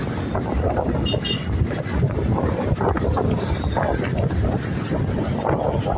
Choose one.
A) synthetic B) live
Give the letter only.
B